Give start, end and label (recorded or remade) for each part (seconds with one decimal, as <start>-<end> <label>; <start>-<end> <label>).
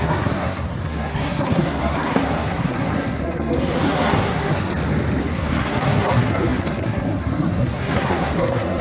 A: 0.0-4.7 remade; 4.7-5.2 recorded; 5.2-8.8 remade